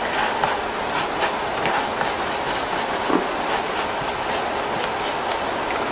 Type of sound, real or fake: real